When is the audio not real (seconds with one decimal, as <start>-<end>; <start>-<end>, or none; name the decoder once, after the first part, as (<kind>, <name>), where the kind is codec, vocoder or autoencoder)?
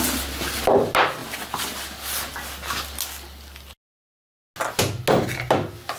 none